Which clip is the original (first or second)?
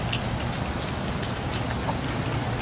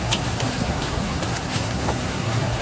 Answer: first